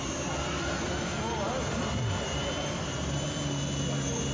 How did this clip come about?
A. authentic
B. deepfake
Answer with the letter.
A